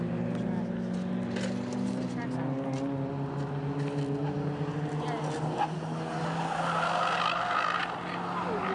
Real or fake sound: real